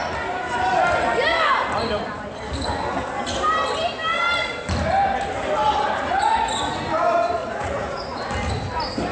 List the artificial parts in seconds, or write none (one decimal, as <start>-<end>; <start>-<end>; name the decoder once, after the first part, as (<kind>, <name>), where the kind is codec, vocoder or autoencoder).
7.4-8.2 (vocoder, Vocos)